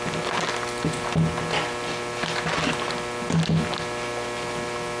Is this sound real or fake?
real